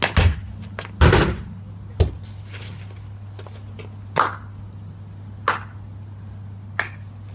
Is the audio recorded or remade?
recorded